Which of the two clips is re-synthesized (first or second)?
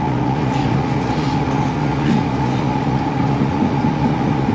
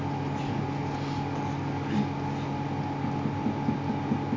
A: first